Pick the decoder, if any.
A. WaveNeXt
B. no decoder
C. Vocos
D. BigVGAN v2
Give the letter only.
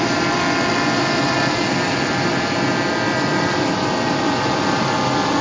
B